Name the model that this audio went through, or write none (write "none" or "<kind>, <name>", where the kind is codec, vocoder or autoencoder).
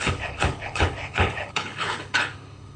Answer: codec, HILCodec